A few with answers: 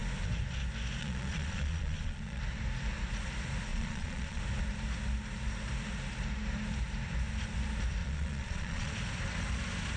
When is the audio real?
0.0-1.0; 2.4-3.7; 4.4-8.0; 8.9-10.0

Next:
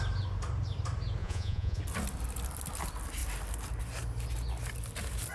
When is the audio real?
0.0-1.2; 1.8-5.3

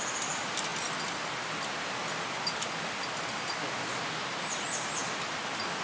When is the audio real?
0.0-5.8

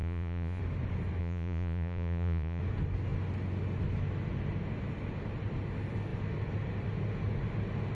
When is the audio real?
0.6-1.2; 2.6-7.9

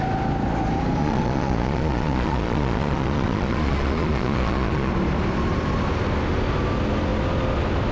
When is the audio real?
0.0-1.0; 4.9-7.9

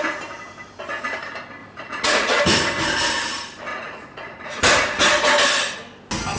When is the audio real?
0.0-1.6; 2.4-3.7; 4.6-6.4

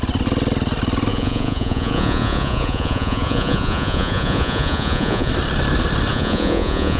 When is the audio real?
0.0-1.1; 5.3-6.1

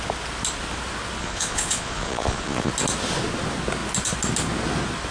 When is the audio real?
0.0-1.2; 2.7-5.1